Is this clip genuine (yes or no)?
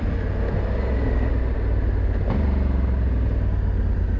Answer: yes